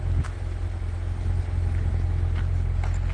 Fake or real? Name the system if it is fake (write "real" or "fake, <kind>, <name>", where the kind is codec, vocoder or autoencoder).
real